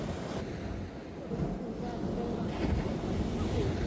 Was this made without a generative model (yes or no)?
yes